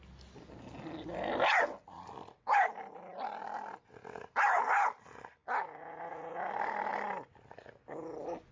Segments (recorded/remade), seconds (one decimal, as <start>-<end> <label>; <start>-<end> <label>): 0.0-3.1 recorded; 3.1-4.6 remade; 4.6-6.9 recorded; 6.9-7.5 remade; 7.5-8.5 recorded